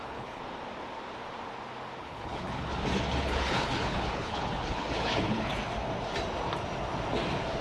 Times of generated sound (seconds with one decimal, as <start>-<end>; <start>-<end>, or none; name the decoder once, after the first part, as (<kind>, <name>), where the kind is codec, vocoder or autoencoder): 0.0-0.4 (codec, HILCodec); 2.0-2.7; 3.2-5.5